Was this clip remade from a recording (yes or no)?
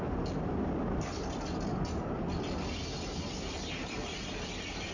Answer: no